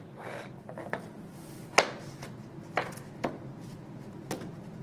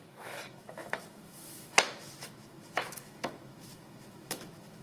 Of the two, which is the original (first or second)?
first